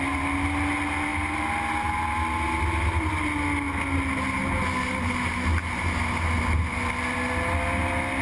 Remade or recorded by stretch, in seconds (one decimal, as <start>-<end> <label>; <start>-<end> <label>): 0.0-8.2 recorded